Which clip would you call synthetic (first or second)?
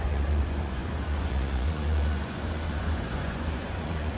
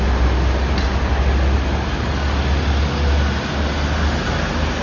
first